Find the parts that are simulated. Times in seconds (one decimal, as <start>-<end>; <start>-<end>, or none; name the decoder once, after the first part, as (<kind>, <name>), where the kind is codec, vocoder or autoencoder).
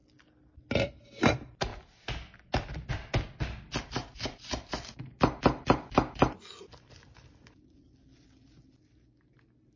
none